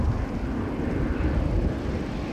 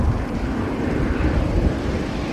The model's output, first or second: second